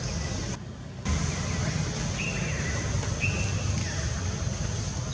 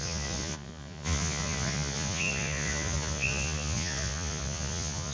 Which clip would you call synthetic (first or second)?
second